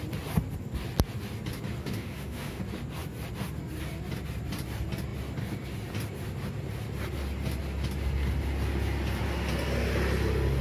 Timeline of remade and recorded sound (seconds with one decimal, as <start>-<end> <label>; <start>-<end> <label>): 0.0-1.8 recorded; 1.8-2.6 remade; 2.6-10.6 recorded